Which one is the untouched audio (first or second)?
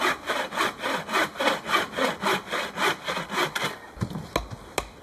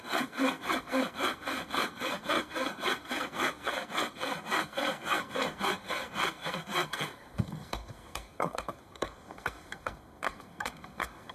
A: first